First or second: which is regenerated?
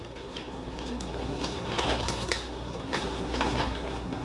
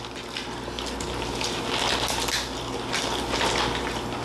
first